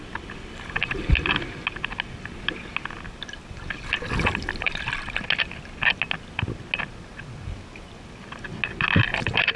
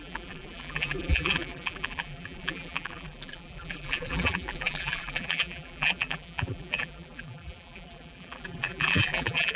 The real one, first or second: first